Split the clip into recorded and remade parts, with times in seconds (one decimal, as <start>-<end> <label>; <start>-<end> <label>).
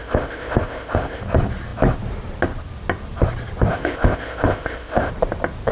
0.0-1.2 remade; 1.2-3.7 recorded; 3.7-5.1 remade; 5.1-5.7 recorded